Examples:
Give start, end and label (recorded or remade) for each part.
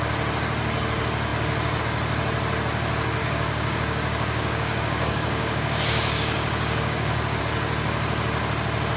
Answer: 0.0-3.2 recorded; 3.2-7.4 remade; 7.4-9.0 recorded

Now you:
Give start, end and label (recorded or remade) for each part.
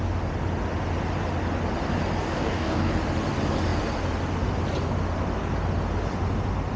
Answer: 0.0-2.2 recorded; 2.2-2.9 remade; 2.9-6.8 recorded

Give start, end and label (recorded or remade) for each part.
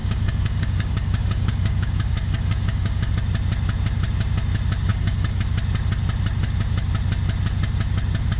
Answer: 0.0-3.1 remade; 3.1-4.9 recorded; 4.9-5.4 remade; 5.4-8.4 recorded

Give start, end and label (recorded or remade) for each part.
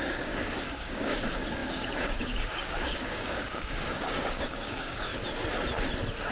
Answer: 0.0-5.1 remade; 5.1-6.3 recorded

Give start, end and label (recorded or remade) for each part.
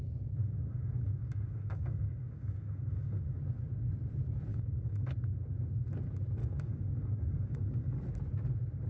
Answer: 0.0-0.4 recorded; 0.4-3.4 remade; 3.4-4.5 recorded; 4.5-5.1 remade; 5.1-6.4 recorded; 6.4-8.0 remade; 8.0-8.9 recorded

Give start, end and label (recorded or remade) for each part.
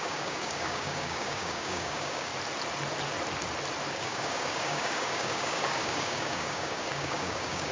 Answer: 0.0-2.3 remade; 2.3-3.9 recorded; 3.9-7.7 remade